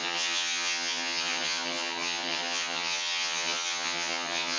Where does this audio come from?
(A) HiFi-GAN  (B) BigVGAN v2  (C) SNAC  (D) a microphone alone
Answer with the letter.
A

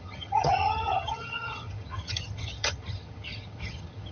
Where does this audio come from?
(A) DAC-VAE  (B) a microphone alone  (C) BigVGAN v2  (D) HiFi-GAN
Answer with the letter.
D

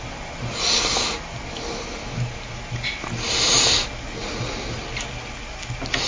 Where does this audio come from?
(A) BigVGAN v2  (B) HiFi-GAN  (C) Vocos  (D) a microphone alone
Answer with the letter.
D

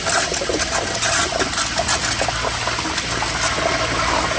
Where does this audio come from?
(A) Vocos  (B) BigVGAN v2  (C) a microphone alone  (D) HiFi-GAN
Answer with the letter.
C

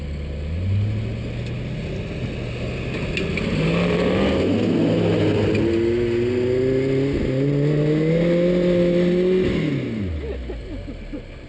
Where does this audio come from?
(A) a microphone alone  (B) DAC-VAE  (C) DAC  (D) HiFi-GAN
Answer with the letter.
A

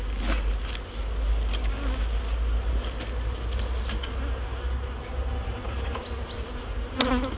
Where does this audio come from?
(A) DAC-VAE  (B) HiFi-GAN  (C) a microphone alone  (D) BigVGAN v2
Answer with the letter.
C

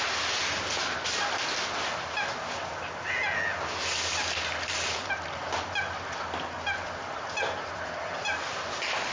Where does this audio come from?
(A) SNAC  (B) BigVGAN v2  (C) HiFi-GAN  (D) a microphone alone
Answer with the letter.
D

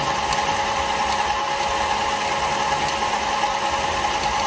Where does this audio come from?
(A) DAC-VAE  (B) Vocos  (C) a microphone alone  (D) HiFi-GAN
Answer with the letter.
C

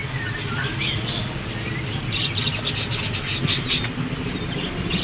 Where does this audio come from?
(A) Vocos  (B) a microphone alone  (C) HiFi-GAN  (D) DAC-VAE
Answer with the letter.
B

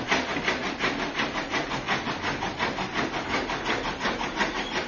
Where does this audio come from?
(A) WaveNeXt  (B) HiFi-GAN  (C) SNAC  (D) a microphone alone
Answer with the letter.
D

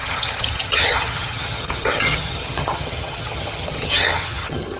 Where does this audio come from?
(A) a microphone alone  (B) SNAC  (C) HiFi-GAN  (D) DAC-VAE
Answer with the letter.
C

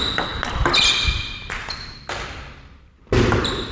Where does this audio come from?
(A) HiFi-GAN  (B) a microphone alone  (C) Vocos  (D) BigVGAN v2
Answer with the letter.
B